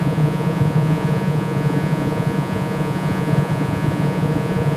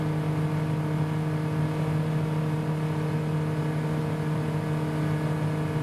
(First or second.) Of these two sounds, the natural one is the second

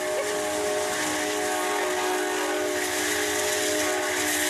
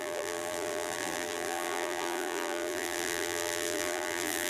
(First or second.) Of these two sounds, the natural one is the first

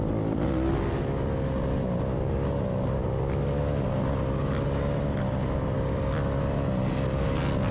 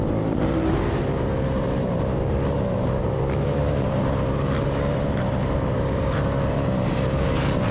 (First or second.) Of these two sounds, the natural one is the first